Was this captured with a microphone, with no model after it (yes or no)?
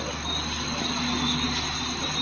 yes